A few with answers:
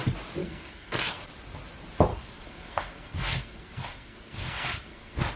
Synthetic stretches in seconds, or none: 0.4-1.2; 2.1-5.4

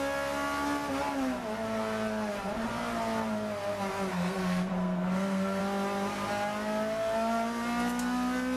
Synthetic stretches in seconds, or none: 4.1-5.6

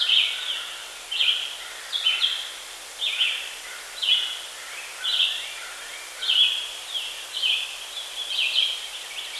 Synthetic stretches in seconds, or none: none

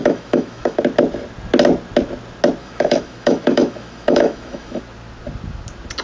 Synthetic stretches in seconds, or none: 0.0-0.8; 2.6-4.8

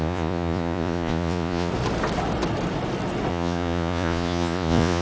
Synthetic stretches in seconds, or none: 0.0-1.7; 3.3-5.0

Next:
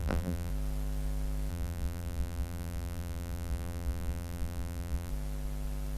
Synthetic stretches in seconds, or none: 0.0-0.5; 1.5-5.1

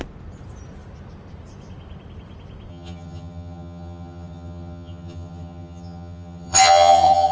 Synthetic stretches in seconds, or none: 2.7-7.3

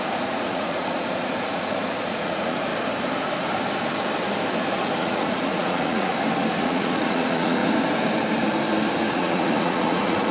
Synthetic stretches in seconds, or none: 0.0-2.7; 4.6-6.1; 6.6-7.6; 9.1-10.3